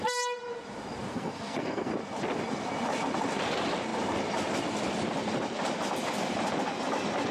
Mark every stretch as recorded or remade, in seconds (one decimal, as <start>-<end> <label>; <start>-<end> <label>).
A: 0.0-1.1 recorded; 1.1-1.9 remade; 1.9-7.3 recorded